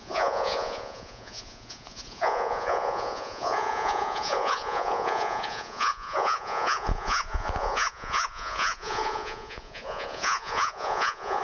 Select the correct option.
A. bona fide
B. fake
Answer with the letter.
B